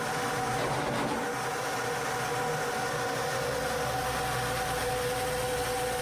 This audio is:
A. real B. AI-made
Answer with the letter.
A